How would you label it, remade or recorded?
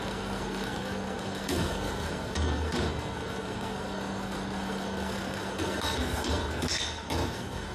remade